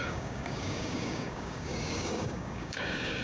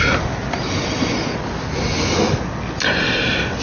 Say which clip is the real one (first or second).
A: second